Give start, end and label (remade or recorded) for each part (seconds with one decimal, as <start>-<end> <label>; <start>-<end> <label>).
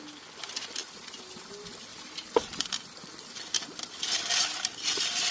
0.0-0.8 recorded; 0.8-1.4 remade; 1.4-1.9 recorded; 1.9-3.5 remade; 3.5-5.3 recorded